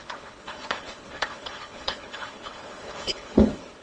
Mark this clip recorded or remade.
remade